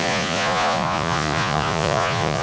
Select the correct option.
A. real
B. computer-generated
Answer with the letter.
B